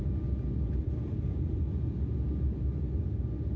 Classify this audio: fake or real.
real